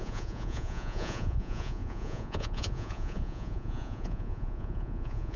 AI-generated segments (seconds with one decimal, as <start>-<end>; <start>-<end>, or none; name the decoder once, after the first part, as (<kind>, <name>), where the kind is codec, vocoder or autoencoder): 0.0-5.4 (vocoder, Vocos)